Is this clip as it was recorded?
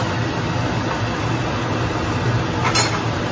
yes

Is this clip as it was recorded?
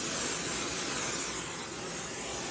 yes